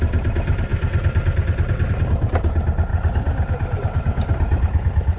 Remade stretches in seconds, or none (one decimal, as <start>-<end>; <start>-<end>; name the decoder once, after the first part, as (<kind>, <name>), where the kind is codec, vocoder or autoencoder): none